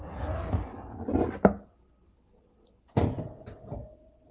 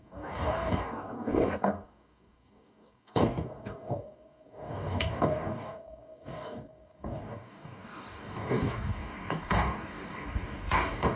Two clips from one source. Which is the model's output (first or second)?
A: second